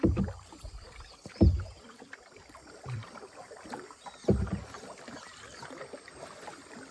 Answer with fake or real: fake